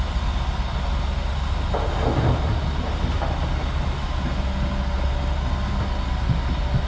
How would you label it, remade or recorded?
recorded